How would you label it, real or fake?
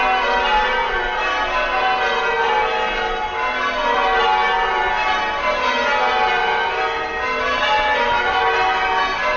real